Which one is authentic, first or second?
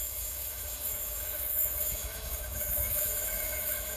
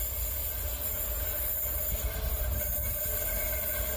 second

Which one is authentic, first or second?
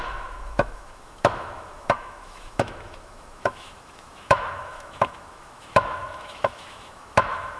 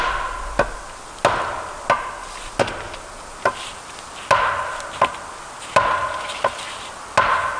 second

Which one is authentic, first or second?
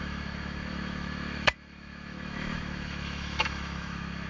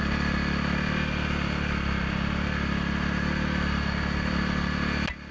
second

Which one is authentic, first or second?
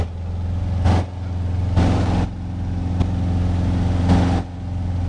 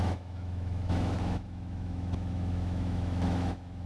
first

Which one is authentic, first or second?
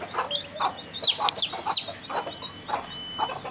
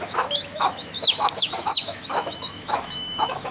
first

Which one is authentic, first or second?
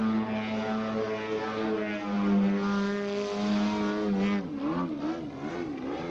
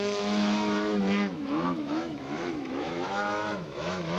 first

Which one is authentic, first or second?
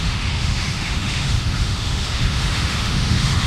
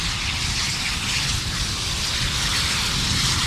second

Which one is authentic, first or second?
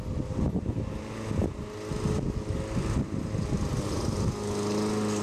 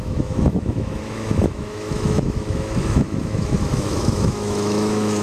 first